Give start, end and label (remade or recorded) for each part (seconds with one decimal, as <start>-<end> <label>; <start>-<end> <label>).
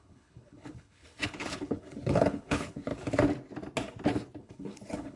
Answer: 0.0-2.9 remade; 2.9-4.4 recorded; 4.4-5.2 remade